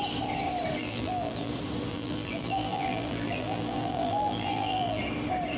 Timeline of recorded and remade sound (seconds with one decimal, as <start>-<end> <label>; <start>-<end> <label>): 0.0-0.8 recorded; 0.8-1.5 remade; 1.5-1.9 recorded; 1.9-5.0 remade; 5.0-5.6 recorded